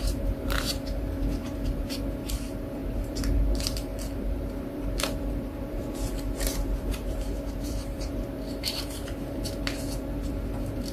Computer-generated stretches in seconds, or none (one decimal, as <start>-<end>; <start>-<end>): 0.0-10.9